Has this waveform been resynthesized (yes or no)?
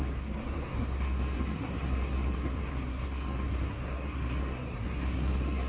yes